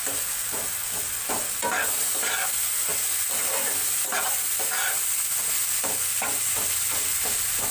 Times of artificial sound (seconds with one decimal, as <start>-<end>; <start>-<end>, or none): none